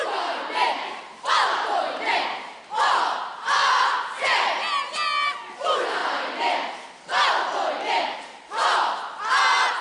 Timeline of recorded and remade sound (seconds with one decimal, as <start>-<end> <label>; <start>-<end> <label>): 0.0-3.6 remade; 3.6-5.4 recorded; 5.4-6.0 remade; 6.0-7.7 recorded; 7.7-9.0 remade; 9.0-9.8 recorded